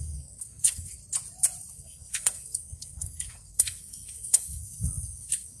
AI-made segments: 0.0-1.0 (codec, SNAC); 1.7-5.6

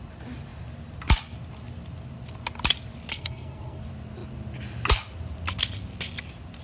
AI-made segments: 3.1-3.8 (codec, SNAC)

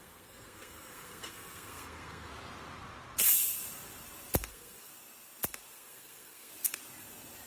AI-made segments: 0.0-2.3 (codec, SNAC); 4.5-4.9; 5.7-6.5

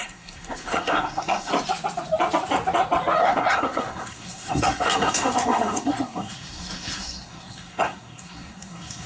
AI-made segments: 0.0-1.5 (codec, SNAC); 3.2-9.1

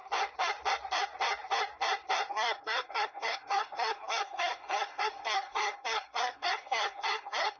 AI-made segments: 2.3-7.6 (codec, SNAC)